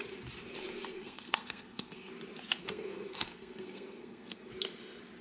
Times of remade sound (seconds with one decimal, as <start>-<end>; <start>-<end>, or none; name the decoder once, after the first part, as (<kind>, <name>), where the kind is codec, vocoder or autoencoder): 0.9-2.1 (codec, SNAC); 2.6-4.5